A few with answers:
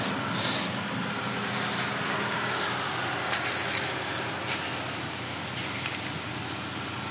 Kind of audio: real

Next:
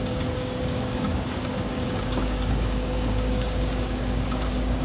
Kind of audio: fake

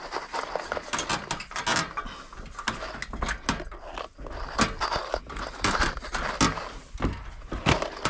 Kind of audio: real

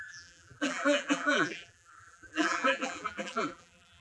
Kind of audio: fake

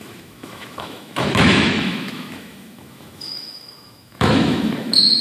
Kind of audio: fake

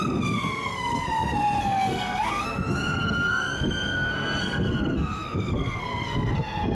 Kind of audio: fake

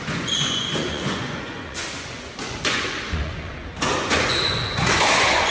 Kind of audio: fake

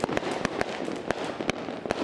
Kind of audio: real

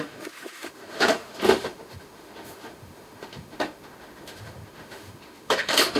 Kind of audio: fake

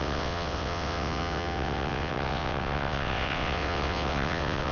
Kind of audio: fake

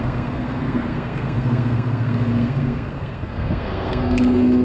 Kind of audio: fake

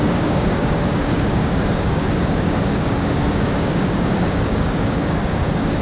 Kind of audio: fake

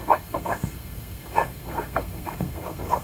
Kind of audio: fake